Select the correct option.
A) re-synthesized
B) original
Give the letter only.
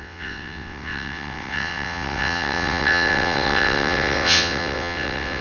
A